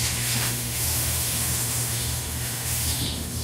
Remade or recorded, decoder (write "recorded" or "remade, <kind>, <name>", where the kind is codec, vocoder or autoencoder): remade, autoencoder, DAC-VAE